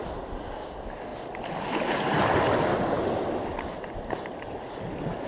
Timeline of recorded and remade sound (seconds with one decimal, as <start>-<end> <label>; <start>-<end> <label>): 0.0-5.3 recorded